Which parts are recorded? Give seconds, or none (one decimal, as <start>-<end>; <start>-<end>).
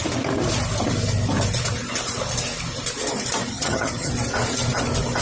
0.0-3.5; 4.1-5.2